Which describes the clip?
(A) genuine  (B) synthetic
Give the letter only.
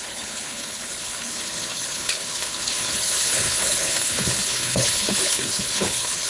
B